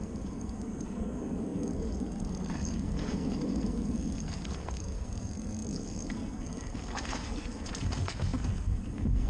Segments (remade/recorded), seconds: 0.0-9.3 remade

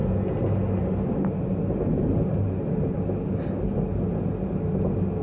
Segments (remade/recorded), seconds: 0.0-5.2 recorded

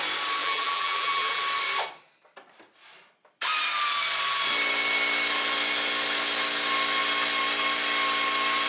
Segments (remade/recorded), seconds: 0.0-0.4 recorded; 0.4-1.4 remade; 1.4-8.7 recorded

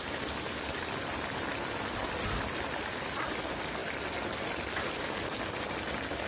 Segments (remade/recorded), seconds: 0.0-3.8 remade; 3.8-6.3 recorded

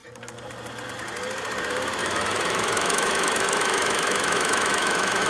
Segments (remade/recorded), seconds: 0.0-2.0 recorded; 2.0-5.3 remade

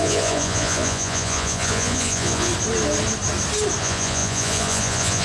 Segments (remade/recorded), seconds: 0.0-2.5 remade; 2.5-3.8 recorded; 3.8-5.2 remade